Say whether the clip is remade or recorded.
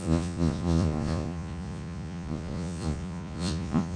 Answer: remade